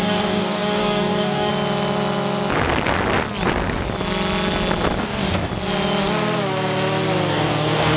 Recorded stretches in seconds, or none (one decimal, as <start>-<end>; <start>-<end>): 1.5-5.0; 5.5-7.3